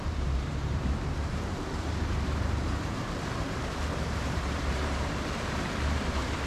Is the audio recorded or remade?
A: remade